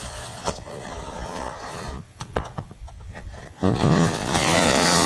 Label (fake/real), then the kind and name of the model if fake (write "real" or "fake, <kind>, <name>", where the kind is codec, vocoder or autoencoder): fake, vocoder, Vocos